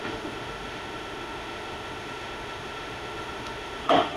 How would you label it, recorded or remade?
remade